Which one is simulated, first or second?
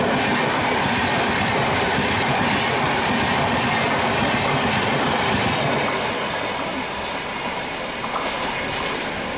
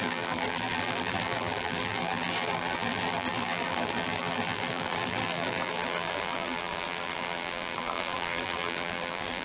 second